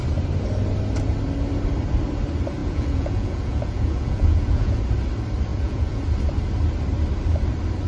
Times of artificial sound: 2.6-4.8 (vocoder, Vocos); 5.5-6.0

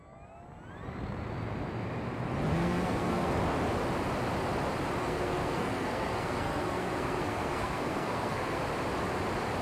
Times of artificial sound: 2.5-3.4 (codec, SNAC); 5.0-8.6

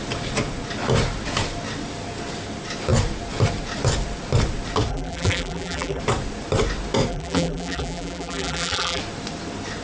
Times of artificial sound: 4.9-6.0 (vocoder, BigVGAN v2); 7.1-9.0

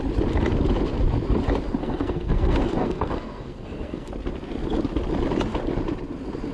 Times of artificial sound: 1.8-4.1 (codec, SNAC)

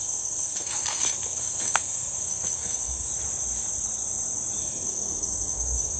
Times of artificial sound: 0.0-3.1 (codec, SNAC); 4.6-6.0